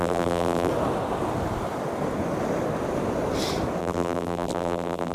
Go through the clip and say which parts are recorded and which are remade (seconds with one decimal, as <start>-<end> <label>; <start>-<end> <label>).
0.0-0.7 remade; 0.7-3.8 recorded; 3.8-5.1 remade